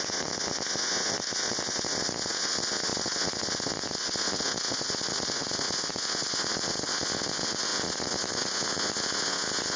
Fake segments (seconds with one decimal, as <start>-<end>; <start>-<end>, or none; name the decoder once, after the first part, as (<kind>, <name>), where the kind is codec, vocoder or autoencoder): 0.0-9.8 (vocoder, Vocos)